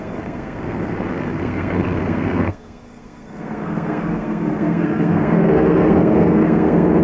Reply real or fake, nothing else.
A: fake